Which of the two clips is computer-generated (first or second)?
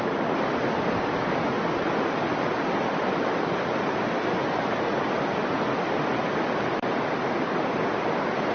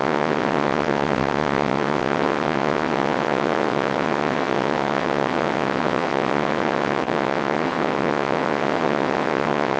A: second